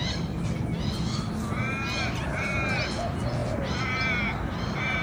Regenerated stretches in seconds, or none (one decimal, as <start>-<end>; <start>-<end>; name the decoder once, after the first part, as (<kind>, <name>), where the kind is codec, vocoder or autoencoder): none